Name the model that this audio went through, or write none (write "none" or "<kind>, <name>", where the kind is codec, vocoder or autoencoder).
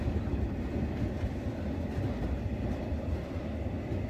none